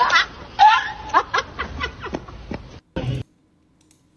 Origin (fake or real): real